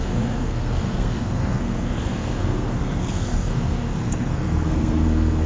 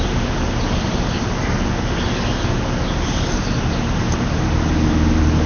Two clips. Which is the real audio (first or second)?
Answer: second